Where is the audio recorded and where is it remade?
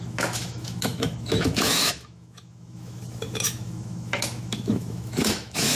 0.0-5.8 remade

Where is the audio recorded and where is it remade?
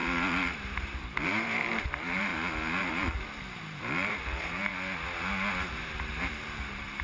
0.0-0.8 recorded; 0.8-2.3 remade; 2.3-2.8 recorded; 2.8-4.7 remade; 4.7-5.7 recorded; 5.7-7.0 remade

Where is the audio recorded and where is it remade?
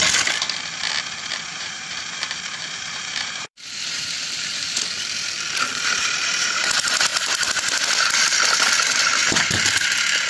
0.0-1.5 recorded; 1.5-4.8 remade; 4.8-10.3 recorded